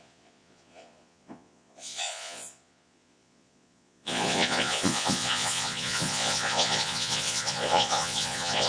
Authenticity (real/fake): fake